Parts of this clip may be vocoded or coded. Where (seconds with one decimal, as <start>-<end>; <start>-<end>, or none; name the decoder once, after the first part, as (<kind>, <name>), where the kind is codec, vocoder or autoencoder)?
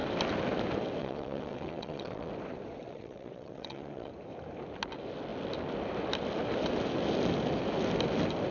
1.0-2.3 (vocoder, WaveNeXt); 2.8-4.1